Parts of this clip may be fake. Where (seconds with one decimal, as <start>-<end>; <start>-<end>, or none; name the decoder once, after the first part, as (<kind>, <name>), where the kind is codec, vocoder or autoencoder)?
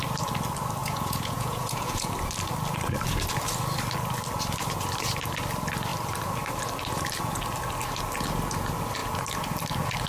0.8-2.1 (vocoder, Vocos)